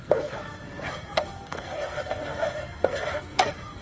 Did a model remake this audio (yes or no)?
yes